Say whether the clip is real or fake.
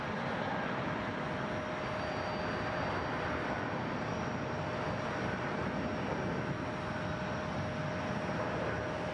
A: real